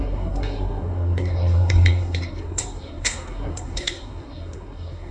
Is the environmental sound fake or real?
fake